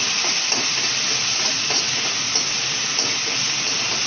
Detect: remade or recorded recorded